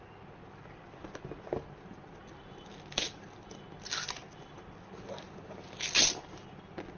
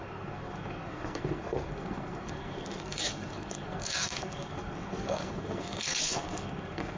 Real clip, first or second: first